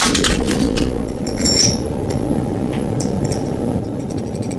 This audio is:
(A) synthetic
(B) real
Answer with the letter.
A